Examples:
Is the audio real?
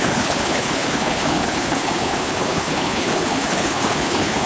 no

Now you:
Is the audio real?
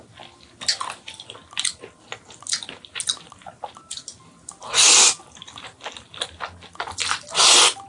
yes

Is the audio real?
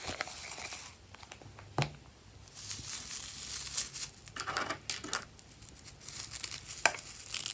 yes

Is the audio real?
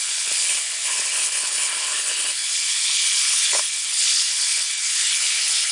no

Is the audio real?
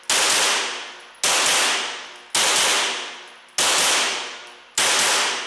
yes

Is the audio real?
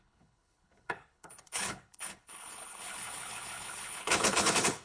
no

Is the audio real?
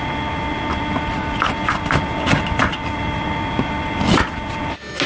yes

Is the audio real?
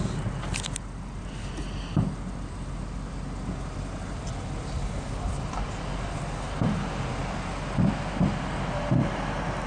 yes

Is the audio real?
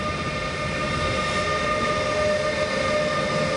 yes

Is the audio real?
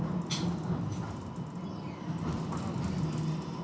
yes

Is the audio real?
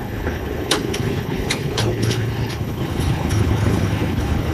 no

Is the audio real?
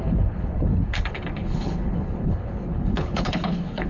no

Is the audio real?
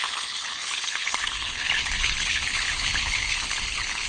no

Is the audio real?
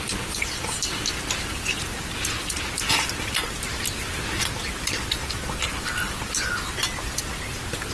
yes